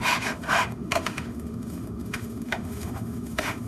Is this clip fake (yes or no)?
yes